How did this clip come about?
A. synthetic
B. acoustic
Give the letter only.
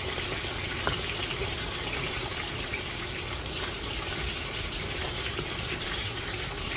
A